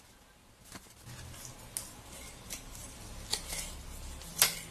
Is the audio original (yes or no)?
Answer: yes